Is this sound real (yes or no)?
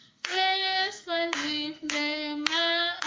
no